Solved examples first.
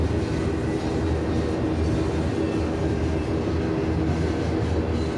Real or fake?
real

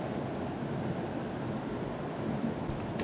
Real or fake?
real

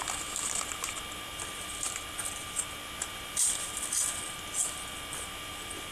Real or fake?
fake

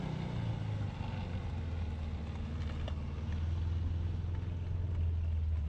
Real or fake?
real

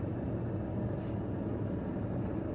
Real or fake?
real